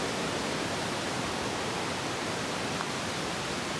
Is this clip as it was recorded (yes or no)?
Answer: no